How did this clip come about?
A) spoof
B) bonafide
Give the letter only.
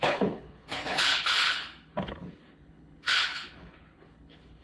A